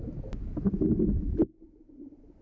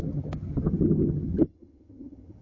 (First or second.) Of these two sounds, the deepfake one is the second